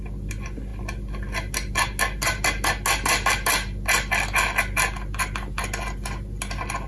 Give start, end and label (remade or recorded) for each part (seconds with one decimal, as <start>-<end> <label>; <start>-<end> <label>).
0.0-6.9 recorded

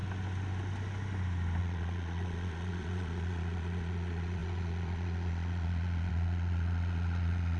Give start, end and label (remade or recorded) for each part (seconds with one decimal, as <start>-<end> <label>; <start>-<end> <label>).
0.0-1.6 recorded; 1.6-7.6 remade